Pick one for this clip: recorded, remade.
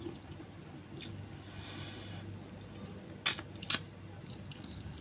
recorded